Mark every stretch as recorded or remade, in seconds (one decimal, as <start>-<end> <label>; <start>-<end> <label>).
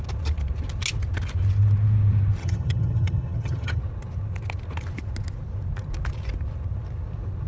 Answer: 0.0-2.4 recorded; 2.4-3.8 remade; 3.8-7.5 recorded